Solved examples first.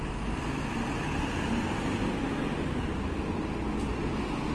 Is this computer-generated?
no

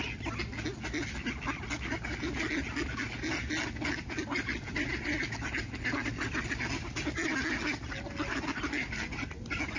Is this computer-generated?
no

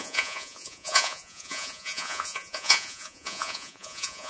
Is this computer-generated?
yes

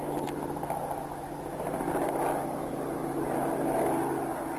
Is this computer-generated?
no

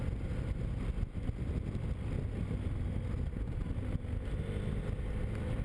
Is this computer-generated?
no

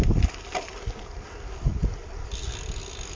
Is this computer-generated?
no